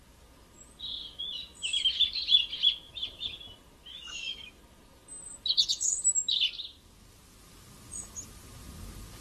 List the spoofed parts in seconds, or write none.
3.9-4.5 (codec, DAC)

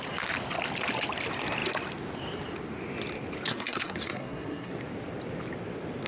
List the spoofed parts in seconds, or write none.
3.5-4.7 (codec, SNAC)

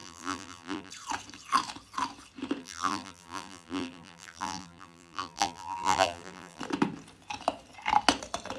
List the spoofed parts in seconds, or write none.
0.0-0.9 (vocoder, BigVGAN v2); 2.6-6.6